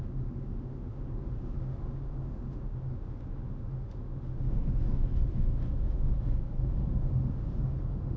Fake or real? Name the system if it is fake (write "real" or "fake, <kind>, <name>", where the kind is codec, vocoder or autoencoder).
fake, autoencoder, DAC-VAE